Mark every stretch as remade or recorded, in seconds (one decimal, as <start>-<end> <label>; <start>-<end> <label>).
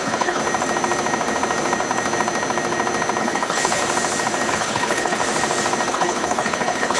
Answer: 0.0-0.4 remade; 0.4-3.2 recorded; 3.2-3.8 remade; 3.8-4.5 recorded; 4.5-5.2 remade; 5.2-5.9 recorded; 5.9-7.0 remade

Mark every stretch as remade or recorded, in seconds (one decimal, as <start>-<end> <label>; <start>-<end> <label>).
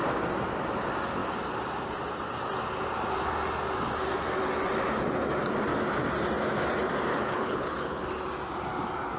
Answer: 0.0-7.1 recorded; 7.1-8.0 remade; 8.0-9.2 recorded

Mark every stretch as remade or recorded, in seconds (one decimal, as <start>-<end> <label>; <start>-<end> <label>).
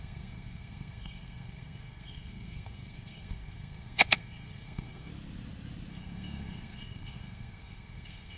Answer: 0.0-5.1 remade; 5.1-5.9 recorded; 5.9-8.4 remade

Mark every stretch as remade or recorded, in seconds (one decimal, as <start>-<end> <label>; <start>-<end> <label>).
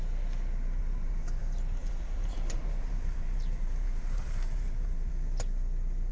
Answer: 0.0-0.8 recorded; 0.8-1.4 remade; 1.4-1.8 recorded; 1.8-5.1 remade; 5.1-6.1 recorded